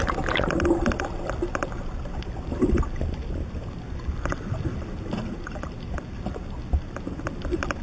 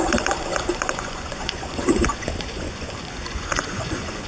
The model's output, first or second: second